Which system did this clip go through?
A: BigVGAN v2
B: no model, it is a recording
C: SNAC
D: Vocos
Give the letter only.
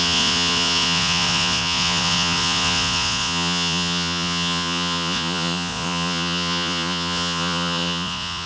D